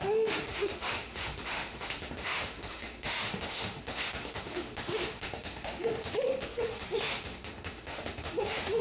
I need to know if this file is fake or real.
fake